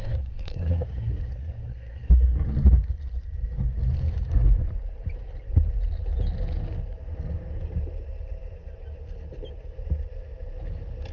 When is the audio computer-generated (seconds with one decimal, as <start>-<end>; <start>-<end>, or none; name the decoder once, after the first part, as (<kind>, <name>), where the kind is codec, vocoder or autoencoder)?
0.0-2.1 (codec, SNAC)